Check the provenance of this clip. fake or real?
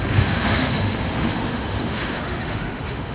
fake